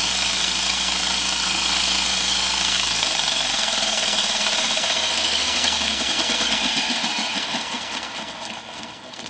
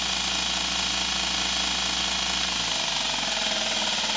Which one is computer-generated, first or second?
first